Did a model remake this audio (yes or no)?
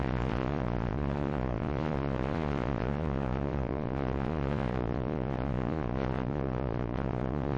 yes